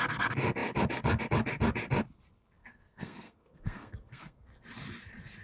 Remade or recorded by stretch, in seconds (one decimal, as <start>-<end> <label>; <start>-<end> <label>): 0.0-2.6 recorded; 2.6-4.5 remade; 4.5-5.4 recorded